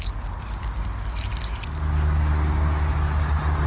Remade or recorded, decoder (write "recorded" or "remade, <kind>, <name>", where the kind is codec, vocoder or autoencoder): recorded